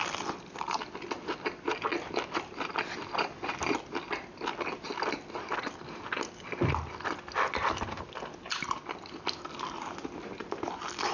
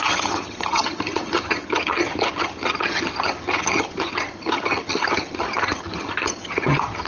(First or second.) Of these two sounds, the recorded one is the first